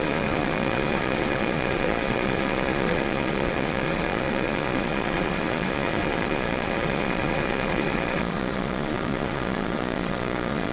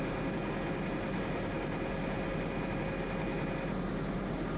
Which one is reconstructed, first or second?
first